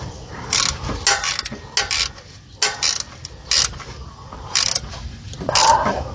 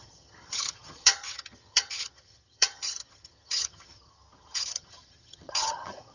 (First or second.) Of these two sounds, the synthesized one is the second